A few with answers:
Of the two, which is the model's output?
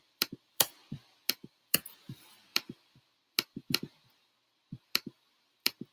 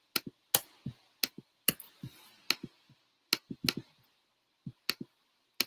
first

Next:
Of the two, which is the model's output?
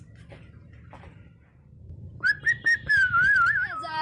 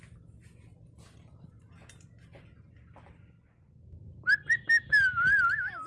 first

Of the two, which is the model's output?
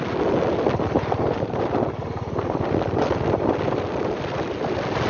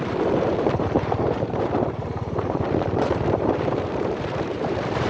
second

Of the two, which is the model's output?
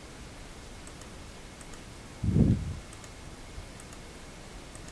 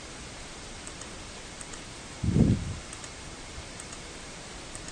second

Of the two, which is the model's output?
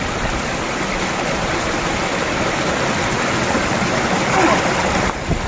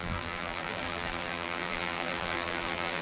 second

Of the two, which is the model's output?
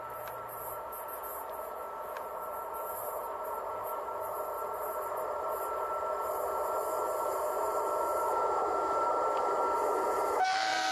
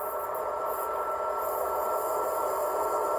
first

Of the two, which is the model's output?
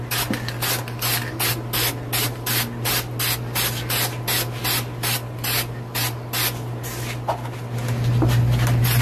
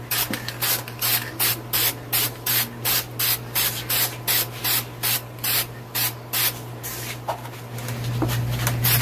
second